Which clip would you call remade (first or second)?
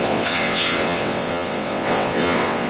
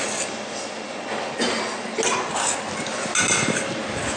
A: first